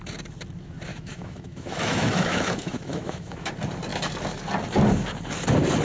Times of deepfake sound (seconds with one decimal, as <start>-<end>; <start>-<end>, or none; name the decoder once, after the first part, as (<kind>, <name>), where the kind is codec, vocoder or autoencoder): 0.9-3.5 (autoencoder, DAC-VAE)